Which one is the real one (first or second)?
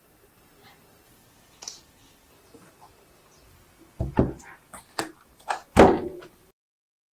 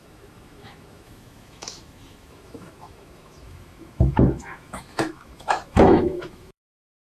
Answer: first